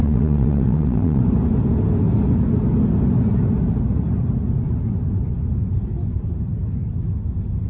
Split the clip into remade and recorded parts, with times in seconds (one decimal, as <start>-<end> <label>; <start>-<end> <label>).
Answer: 0.0-1.2 remade; 1.2-7.7 recorded